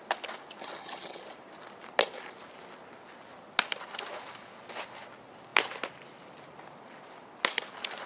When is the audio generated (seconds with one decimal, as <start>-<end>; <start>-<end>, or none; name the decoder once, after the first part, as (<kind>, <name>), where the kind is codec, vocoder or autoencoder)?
0.6-1.2 (vocoder, HiFi-GAN)

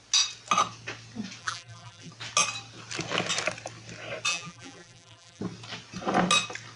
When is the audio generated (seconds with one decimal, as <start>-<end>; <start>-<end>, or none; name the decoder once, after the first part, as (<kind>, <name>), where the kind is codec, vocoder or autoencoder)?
1.4-2.1 (vocoder, BigVGAN v2); 4.3-5.4

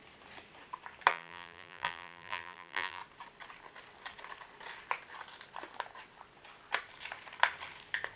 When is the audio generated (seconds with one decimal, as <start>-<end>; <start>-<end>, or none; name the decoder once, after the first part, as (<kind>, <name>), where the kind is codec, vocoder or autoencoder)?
1.1-3.0 (vocoder, BigVGAN v2)

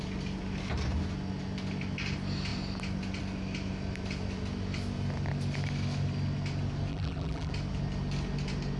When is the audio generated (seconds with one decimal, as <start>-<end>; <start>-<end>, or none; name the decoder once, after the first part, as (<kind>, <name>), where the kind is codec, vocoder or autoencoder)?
6.9-7.5 (vocoder, BigVGAN v2)

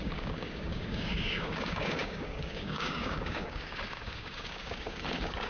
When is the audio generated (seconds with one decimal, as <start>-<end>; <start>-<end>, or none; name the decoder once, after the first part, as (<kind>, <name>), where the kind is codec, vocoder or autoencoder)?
0.0-5.5 (codec, DAC)